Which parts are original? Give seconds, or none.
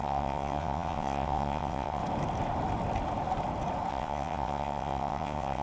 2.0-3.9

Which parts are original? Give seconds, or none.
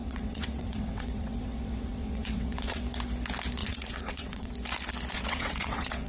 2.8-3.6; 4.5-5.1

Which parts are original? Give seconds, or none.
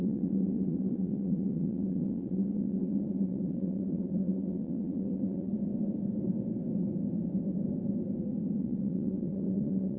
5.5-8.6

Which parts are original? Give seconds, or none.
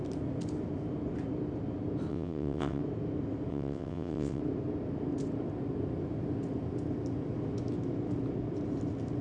0.0-2.1; 2.8-3.5; 4.4-9.2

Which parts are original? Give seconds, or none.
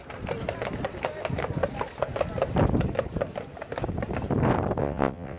0.0-4.8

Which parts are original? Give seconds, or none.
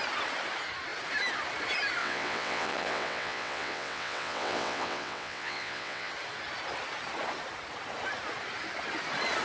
0.0-2.0; 6.1-9.4